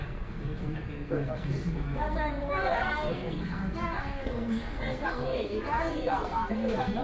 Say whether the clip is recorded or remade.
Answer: remade